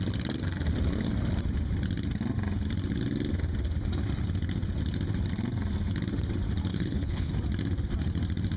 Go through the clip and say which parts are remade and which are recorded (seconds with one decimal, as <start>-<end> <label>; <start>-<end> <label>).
0.0-6.7 recorded; 6.7-7.3 remade; 7.3-8.6 recorded